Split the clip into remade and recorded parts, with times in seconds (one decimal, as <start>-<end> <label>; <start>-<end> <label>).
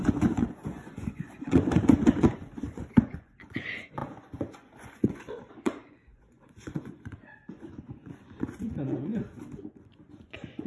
0.0-9.1 remade; 9.1-10.1 recorded; 10.1-10.7 remade